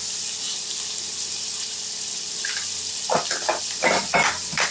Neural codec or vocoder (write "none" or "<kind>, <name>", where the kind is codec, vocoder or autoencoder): none